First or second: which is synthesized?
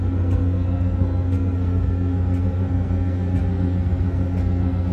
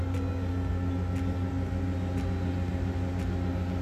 first